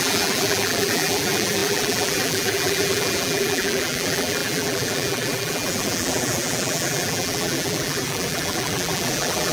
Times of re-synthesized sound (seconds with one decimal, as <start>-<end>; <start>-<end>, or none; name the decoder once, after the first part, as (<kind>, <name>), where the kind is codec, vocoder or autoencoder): 0.0-9.5 (vocoder, BigVGAN v2)